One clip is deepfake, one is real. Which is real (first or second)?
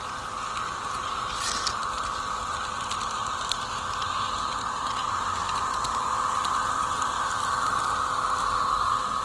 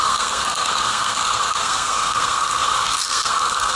first